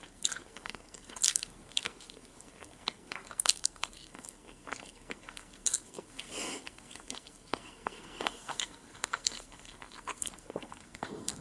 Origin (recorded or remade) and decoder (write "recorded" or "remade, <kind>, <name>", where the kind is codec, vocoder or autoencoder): remade, codec, SNAC